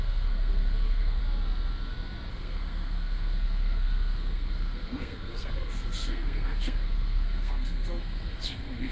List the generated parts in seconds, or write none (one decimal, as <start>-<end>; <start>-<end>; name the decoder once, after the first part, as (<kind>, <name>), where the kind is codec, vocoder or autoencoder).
0.0-1.2 (codec, SNAC); 2.3-8.9